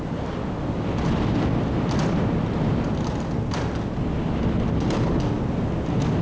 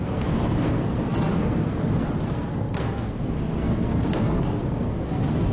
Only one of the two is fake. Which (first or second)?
second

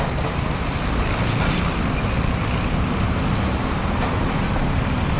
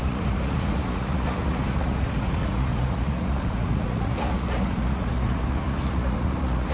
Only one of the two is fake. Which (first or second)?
second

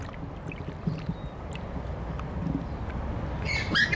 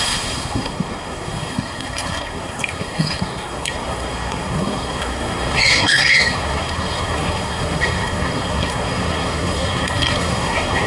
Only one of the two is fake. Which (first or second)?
second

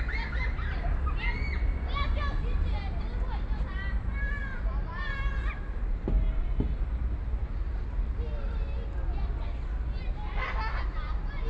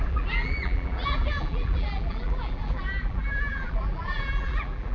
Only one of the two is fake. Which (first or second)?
second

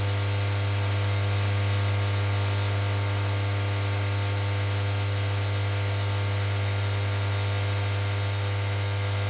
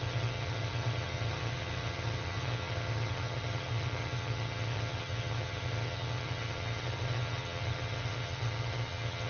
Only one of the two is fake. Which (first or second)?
second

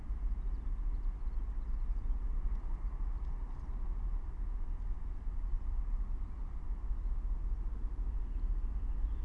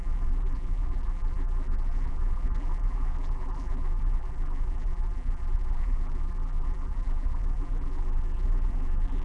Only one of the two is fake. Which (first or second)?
second